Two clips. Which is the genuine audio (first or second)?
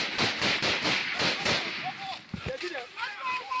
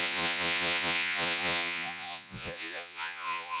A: first